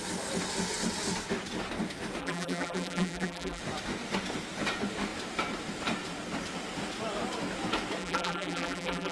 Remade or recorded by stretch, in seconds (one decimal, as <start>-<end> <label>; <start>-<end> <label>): 0.0-2.2 recorded; 2.2-3.6 remade; 3.6-8.0 recorded; 8.0-9.1 remade